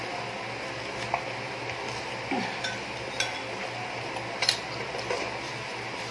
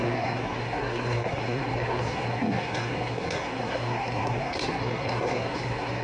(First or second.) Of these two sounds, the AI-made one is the second